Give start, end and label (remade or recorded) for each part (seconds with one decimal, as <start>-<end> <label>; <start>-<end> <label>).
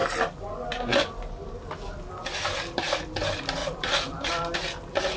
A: 0.0-3.6 recorded; 3.6-4.3 remade; 4.3-5.2 recorded